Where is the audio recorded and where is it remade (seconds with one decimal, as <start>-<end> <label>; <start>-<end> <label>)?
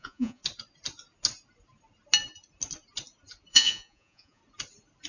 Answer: 0.0-0.4 remade; 0.4-3.5 recorded; 3.5-4.4 remade; 4.4-5.1 recorded